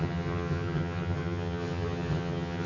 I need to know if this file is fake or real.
fake